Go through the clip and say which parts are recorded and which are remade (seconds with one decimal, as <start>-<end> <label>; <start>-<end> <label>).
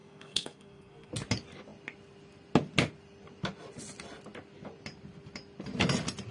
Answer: 0.0-1.1 remade; 1.1-6.3 recorded